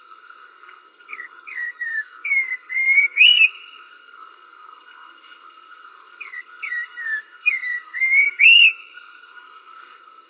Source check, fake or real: fake